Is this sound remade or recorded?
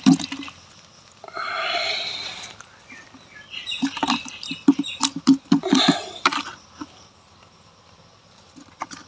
recorded